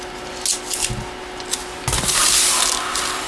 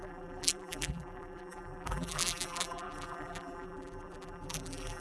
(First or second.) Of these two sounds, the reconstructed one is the second